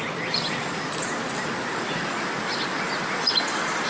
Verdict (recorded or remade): recorded